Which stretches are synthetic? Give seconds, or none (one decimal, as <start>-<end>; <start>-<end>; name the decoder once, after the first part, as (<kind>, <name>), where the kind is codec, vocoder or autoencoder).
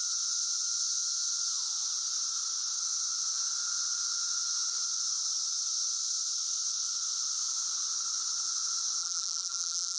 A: 9.0-10.0 (vocoder, BigVGAN v2)